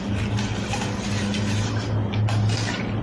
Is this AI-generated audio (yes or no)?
no